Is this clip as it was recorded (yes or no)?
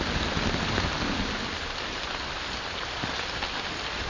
yes